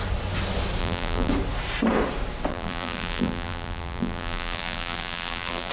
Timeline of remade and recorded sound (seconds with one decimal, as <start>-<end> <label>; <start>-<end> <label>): 0.0-0.8 recorded; 0.8-1.3 remade; 1.3-2.5 recorded; 2.5-5.7 remade